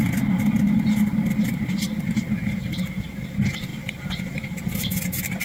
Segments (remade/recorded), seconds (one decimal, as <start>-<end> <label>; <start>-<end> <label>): 0.0-5.4 recorded